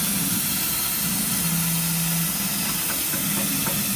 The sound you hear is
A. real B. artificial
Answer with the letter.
A